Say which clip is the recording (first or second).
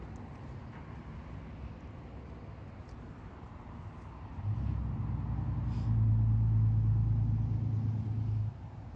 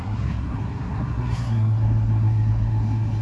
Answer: first